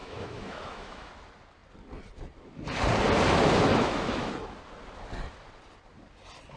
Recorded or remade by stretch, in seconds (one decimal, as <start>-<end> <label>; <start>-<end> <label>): 0.0-1.1 remade; 1.1-3.7 recorded; 3.7-4.3 remade; 4.3-6.6 recorded